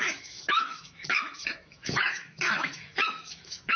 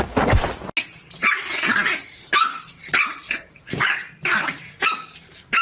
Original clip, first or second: second